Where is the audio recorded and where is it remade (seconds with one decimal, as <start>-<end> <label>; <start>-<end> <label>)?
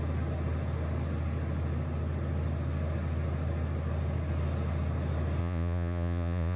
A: 0.0-5.4 recorded; 5.4-6.6 remade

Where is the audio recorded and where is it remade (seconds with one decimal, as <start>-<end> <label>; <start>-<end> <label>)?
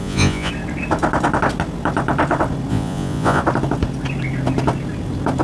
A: 0.0-0.5 remade; 0.5-2.7 recorded; 2.7-3.4 remade; 3.4-5.4 recorded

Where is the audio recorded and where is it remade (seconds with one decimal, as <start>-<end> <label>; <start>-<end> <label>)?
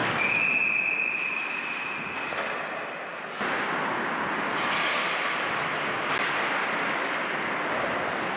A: 0.0-8.4 recorded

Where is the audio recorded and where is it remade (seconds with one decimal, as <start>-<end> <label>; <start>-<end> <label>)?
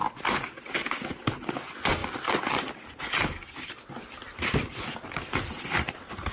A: 0.0-6.3 recorded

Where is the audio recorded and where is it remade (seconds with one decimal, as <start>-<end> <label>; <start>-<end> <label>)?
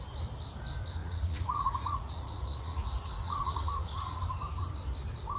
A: 0.0-1.0 recorded; 1.0-4.2 remade; 4.2-5.4 recorded